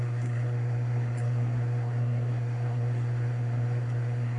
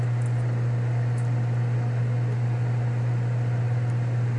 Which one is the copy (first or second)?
first